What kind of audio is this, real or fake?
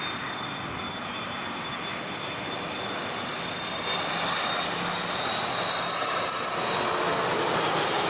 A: real